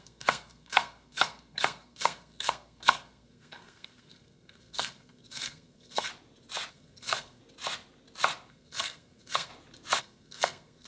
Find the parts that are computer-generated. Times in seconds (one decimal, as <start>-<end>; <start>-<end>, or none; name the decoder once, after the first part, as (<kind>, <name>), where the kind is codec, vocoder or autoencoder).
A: 0.0-6.1 (codec, SNAC); 6.7-7.4; 8.5-9.5; 10.0-10.9